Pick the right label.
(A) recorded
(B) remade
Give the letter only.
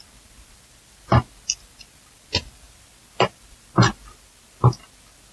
A